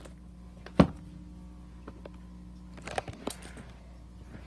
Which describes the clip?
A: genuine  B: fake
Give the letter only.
A